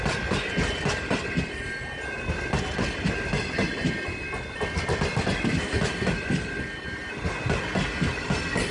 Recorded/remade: recorded